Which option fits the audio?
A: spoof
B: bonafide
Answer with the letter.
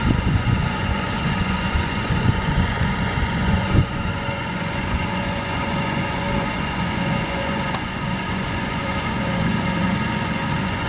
A